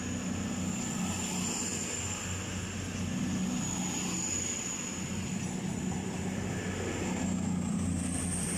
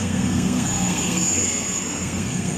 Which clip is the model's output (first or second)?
second